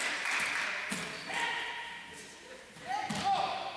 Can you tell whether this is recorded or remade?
recorded